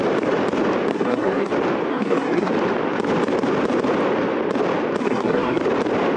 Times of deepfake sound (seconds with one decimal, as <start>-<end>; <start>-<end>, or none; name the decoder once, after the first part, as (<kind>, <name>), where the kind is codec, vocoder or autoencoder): 0.9-1.5 (codec, SNAC); 1.9-2.5; 5.0-5.6